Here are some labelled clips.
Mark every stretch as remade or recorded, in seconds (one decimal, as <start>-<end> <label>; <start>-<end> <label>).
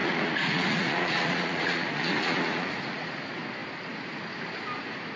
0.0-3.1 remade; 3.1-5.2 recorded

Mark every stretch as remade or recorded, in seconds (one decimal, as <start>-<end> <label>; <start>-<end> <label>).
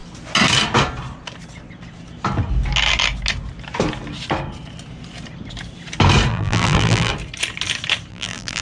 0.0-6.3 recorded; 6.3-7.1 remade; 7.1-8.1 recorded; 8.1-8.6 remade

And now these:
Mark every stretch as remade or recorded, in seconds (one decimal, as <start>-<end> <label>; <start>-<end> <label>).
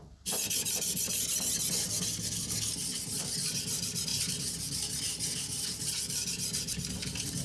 0.0-7.4 recorded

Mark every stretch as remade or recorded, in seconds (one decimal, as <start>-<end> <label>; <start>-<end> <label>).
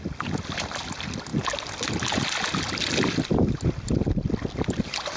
0.0-5.2 recorded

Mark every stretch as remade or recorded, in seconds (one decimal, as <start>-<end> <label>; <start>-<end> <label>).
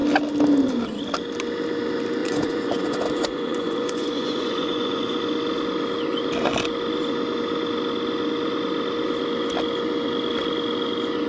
0.0-2.2 recorded; 2.2-5.2 remade; 5.2-11.3 recorded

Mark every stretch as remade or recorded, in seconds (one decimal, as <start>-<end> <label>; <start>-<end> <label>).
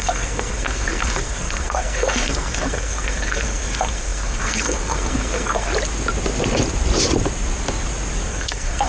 0.0-5.7 remade; 5.7-8.3 recorded; 8.3-8.9 remade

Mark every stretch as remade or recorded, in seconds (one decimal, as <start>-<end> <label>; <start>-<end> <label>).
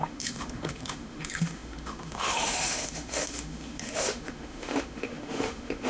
0.0-5.9 remade